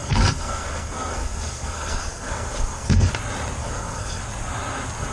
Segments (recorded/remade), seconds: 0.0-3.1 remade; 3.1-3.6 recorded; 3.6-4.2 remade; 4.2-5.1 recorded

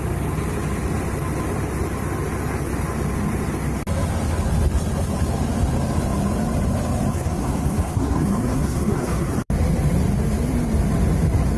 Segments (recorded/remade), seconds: 0.0-7.1 recorded; 7.1-9.3 remade; 9.3-11.6 recorded

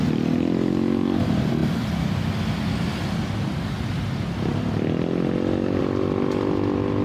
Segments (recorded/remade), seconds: 0.0-7.0 recorded